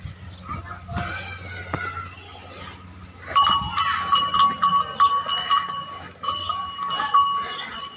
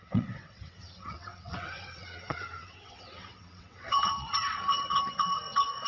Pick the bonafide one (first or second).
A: first